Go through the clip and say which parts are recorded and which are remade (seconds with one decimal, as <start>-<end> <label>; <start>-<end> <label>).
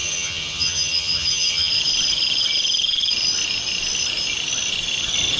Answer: 0.0-1.7 remade; 1.7-5.4 recorded